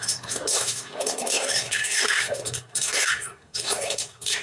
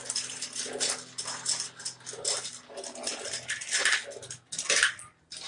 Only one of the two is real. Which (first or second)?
second